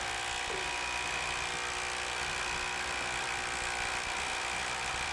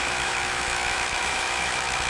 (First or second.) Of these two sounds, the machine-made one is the second